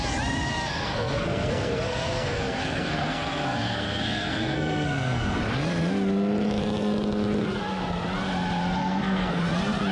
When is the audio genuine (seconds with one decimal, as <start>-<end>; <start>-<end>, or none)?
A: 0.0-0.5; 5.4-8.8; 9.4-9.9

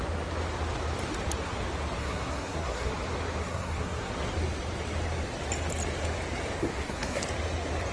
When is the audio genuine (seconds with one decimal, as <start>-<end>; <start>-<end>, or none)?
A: 0.0-2.0; 2.9-3.4; 4.1-6.6; 7.2-7.9

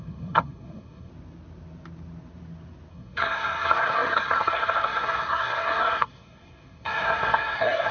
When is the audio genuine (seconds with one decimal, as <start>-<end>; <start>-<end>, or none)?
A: 1.1-2.9

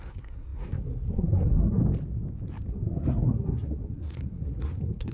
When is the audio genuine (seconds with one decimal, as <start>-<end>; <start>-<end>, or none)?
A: 1.8-2.7